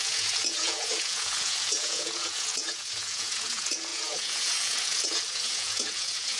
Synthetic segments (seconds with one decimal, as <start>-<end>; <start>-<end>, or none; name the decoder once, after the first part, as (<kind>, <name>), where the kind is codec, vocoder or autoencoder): 0.0-6.4 (vocoder, Vocos)